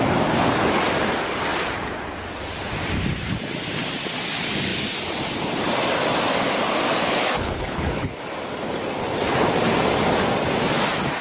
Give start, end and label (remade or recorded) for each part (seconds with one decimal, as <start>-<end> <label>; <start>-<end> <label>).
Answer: 0.0-7.0 recorded; 7.0-8.2 remade; 8.2-11.2 recorded